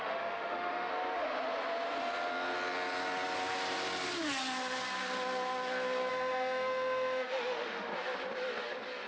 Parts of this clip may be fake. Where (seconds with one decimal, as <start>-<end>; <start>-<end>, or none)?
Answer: 0.0-0.9; 6.1-7.9